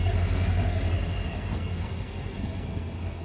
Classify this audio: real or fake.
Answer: fake